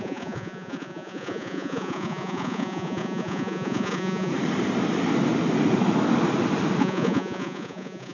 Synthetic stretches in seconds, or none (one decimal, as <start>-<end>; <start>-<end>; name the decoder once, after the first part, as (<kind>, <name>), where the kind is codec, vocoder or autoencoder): 0.0-4.3 (vocoder, Vocos); 6.8-8.1